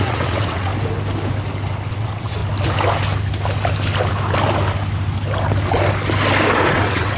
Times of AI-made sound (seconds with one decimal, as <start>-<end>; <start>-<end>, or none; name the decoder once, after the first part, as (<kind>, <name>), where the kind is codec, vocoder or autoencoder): 0.0-0.7 (vocoder, WaveNeXt); 1.9-2.4; 6.7-7.2